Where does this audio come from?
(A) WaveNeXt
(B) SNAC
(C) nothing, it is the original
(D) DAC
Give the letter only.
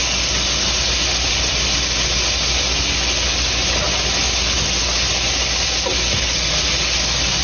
C